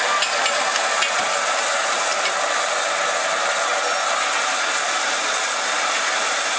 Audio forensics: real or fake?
real